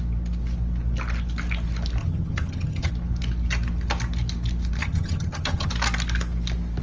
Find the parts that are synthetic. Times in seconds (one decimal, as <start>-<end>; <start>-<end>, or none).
2.0-2.9; 4.8-5.7